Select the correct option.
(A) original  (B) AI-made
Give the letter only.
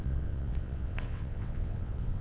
B